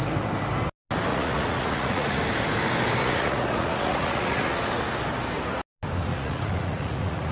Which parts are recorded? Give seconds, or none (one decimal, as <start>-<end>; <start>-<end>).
0.0-1.1; 2.2-3.0; 4.6-6.1

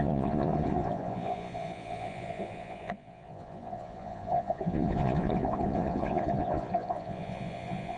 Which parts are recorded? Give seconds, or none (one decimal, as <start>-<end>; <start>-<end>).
none

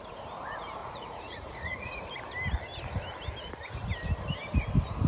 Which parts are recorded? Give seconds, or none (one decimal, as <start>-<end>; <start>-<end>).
0.0-0.8; 2.0-5.1

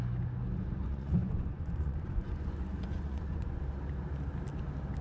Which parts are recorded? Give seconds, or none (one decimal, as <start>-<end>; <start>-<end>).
0.0-0.9; 3.6-5.0

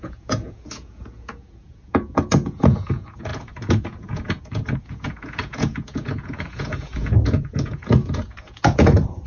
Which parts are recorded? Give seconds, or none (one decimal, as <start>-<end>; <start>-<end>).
none

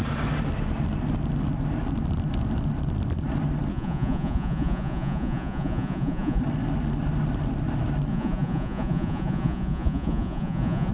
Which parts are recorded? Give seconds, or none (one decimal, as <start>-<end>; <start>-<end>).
0.0-3.7; 6.4-8.1

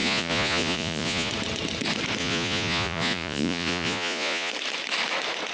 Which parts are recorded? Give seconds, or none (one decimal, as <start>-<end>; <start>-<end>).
1.3-2.2; 4.5-5.5

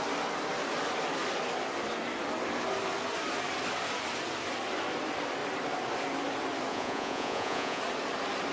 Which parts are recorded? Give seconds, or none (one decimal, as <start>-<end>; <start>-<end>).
0.0-6.7; 7.8-8.5